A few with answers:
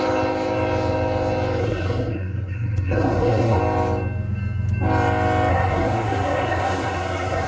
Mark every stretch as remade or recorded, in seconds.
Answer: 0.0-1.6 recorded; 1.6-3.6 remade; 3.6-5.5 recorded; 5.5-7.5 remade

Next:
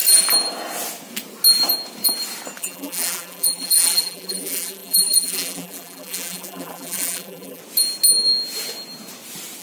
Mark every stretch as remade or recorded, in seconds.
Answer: 0.0-2.6 recorded; 2.6-7.6 remade; 7.6-9.6 recorded

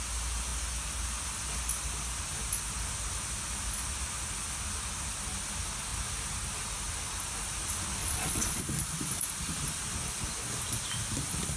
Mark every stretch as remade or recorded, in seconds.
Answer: 0.0-8.0 recorded; 8.0-8.6 remade; 8.6-11.6 recorded

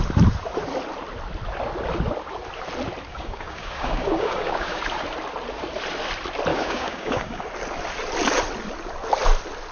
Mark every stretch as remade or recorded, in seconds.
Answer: 0.0-3.1 recorded; 3.1-4.8 remade; 4.8-6.5 recorded; 6.5-7.4 remade; 7.4-9.7 recorded